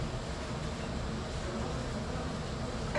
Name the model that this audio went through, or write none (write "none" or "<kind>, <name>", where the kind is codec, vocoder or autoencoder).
none